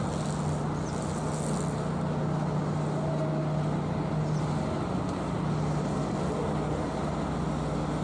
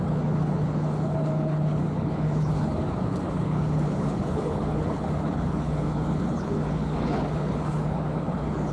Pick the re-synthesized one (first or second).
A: second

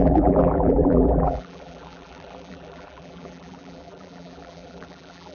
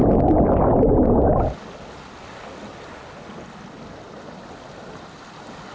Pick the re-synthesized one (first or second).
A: first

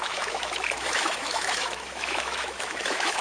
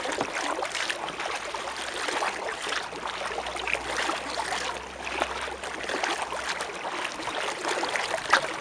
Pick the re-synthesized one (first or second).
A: first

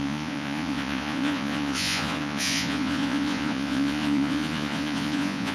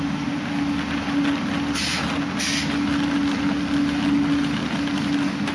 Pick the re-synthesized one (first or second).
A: first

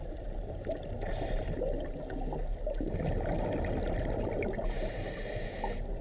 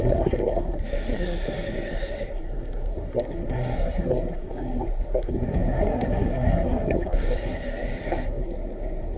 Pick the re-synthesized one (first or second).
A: second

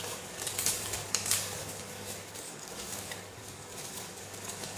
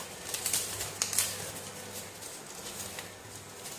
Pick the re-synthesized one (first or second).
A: first